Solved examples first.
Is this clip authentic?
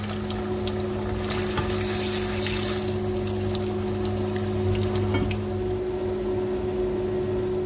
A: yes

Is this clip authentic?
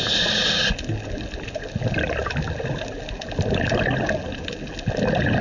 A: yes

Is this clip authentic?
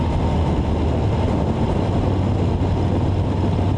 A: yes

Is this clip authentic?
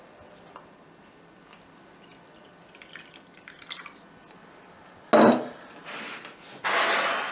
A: yes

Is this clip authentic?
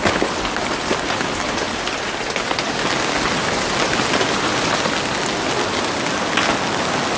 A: yes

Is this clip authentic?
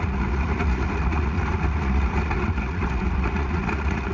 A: no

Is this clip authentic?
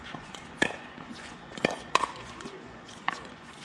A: no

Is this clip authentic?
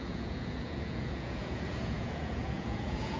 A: no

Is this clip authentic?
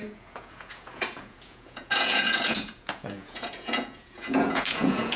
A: no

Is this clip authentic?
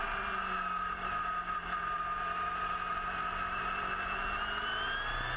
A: yes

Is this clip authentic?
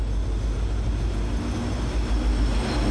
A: yes